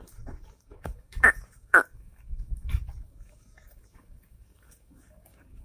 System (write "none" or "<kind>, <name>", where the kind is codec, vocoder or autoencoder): codec, DAC